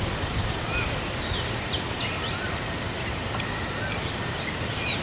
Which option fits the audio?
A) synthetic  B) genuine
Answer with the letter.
B